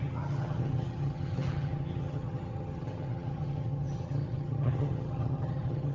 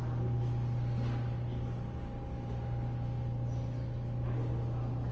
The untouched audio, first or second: second